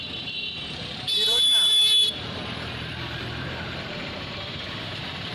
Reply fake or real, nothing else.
fake